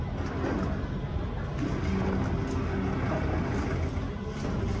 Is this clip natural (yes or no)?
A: yes